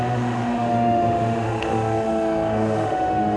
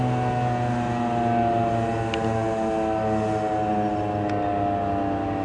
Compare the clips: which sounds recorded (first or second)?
second